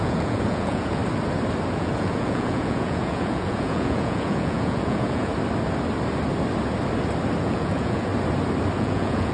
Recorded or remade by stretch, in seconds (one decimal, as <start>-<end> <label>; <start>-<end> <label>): 0.0-1.0 remade; 1.0-1.7 recorded; 1.7-5.3 remade; 5.3-7.4 recorded; 7.4-8.1 remade; 8.1-8.8 recorded; 8.8-9.3 remade